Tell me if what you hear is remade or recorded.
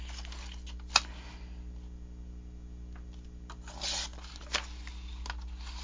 recorded